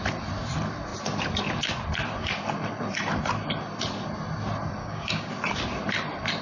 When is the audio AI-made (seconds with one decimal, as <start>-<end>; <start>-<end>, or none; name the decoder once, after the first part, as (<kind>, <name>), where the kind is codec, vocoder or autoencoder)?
4.8-5.3 (codec, DAC)